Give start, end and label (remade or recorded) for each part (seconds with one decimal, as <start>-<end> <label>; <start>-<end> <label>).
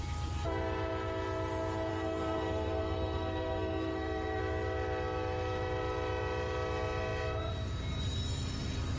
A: 0.0-1.9 recorded; 1.9-4.4 remade; 4.4-9.0 recorded